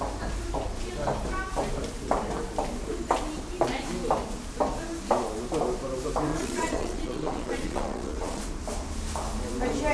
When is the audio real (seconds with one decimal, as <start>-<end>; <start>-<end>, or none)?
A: 0.0-6.3; 8.4-9.9